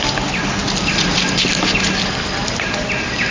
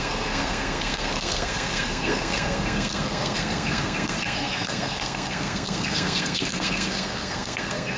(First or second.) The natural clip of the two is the first